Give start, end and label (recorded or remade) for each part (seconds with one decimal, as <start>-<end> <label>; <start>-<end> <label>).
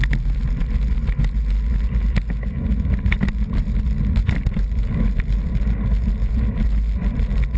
0.0-4.2 recorded; 4.2-6.4 remade; 6.4-7.6 recorded